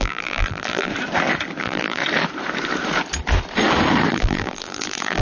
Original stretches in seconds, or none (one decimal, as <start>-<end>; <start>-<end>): 0.9-1.6; 2.0-4.1